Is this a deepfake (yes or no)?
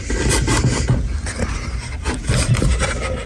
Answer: no